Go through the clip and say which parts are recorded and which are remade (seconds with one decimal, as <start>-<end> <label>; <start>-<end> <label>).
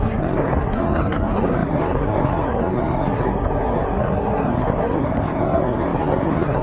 0.0-6.6 remade